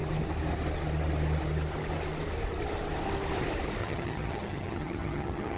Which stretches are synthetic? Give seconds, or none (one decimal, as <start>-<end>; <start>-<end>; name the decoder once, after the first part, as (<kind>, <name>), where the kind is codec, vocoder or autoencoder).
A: 3.8-5.6 (vocoder, HiFi-GAN)